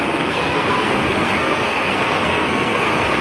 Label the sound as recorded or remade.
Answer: remade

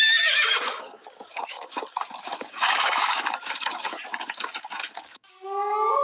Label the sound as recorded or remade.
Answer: remade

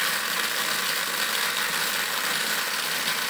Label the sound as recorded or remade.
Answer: recorded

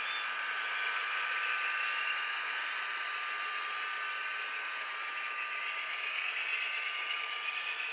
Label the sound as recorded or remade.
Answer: recorded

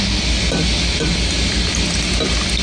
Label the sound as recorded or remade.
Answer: recorded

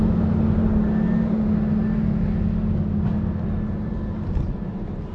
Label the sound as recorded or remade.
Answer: recorded